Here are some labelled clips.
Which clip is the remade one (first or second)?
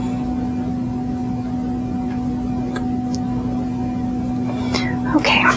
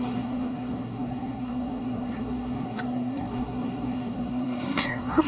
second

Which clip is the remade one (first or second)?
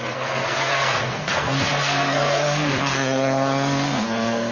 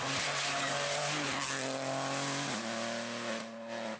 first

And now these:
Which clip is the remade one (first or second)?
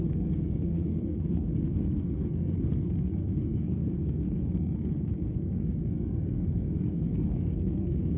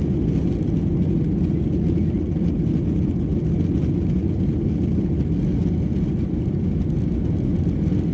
first